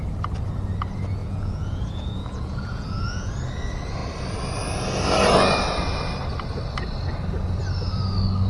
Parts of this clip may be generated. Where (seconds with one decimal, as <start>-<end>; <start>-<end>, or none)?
1.2-3.3